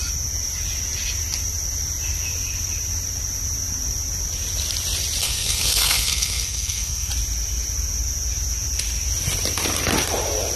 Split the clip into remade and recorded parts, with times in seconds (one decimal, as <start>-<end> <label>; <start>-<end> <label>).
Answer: 0.0-5.2 recorded; 5.2-7.1 remade; 7.1-10.6 recorded

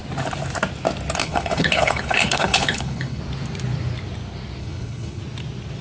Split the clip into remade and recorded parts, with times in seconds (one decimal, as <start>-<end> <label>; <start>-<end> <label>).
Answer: 0.0-1.2 recorded; 1.2-3.2 remade; 3.2-4.6 recorded; 4.6-5.2 remade; 5.2-5.8 recorded

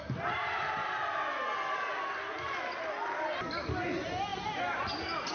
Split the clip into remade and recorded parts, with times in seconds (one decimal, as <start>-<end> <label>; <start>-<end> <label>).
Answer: 0.0-5.3 recorded

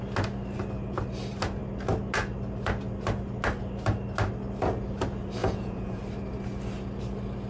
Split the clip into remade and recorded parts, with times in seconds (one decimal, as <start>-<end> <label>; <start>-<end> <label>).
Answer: 0.0-5.4 recorded; 5.4-6.0 remade; 6.0-7.5 recorded

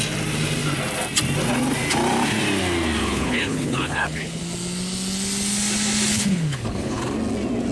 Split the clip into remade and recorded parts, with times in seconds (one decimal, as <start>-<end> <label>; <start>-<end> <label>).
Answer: 0.0-3.0 recorded; 3.0-4.4 remade; 4.4-6.1 recorded; 6.1-7.0 remade; 7.0-7.7 recorded

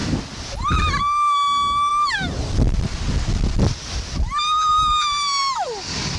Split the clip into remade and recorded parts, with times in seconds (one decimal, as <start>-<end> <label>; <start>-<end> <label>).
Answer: 0.0-1.9 recorded; 1.9-2.8 remade; 2.8-6.2 recorded